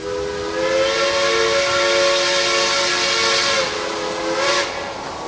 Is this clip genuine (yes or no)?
yes